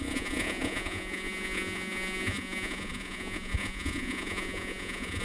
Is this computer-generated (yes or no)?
yes